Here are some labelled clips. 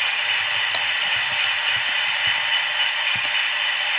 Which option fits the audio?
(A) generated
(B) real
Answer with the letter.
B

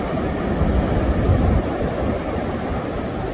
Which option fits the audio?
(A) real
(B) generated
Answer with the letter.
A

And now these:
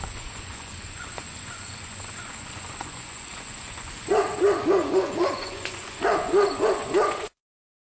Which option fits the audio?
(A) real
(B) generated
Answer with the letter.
B